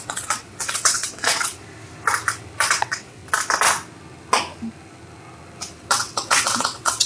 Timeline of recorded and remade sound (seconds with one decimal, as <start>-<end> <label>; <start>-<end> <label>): 0.0-1.6 remade; 1.6-2.7 recorded; 2.7-3.2 remade; 3.2-5.8 recorded; 5.8-7.1 remade